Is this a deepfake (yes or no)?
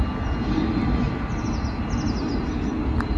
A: no